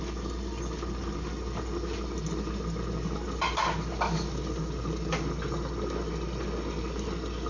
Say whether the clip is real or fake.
real